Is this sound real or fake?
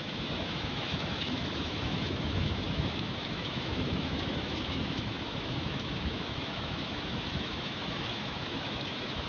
fake